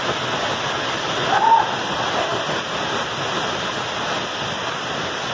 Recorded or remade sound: recorded